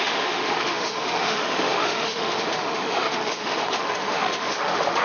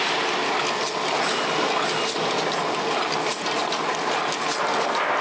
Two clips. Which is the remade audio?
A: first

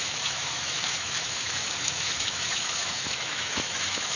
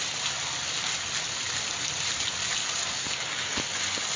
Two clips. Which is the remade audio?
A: first